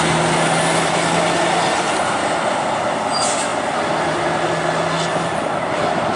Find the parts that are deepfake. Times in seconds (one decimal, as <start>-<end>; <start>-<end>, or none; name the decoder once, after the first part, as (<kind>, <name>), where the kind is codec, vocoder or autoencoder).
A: none